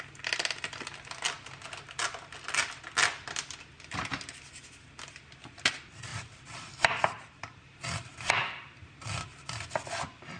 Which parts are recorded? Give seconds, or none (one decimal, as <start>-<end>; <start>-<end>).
0.0-6.1; 8.3-10.4